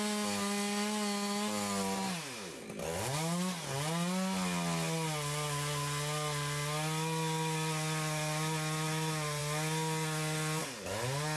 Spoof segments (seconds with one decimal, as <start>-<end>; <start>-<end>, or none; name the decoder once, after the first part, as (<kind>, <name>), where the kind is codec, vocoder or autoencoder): none